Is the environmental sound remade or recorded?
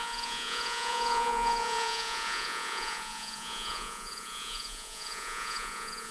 remade